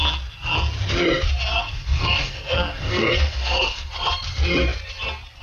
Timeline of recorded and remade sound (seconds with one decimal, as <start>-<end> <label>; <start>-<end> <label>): 0.0-1.5 recorded; 1.5-3.9 remade; 3.9-5.4 recorded